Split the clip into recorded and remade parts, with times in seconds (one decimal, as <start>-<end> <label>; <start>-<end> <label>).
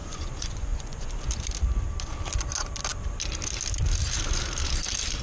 0.0-1.1 remade; 1.1-5.2 recorded